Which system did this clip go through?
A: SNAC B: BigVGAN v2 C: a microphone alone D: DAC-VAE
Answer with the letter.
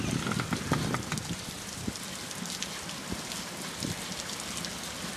C